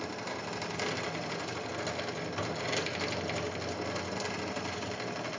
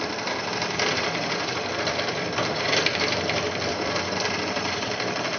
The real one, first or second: first